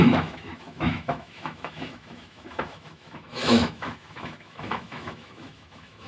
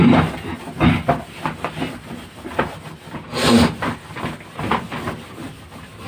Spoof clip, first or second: first